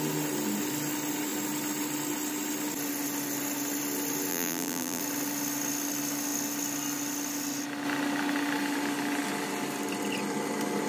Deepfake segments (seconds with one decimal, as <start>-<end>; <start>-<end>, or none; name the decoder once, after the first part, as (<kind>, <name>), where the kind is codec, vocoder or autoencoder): 4.3-5.0 (vocoder, BigVGAN v2)